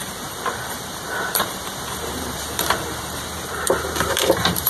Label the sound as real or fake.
fake